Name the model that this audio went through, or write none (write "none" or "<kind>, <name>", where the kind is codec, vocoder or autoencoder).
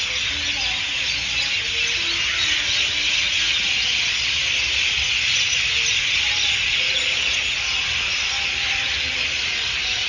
none